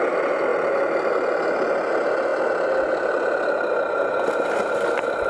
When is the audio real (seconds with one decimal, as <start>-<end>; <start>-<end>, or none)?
0.0-5.3